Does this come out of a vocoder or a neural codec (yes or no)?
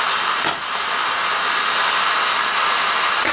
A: no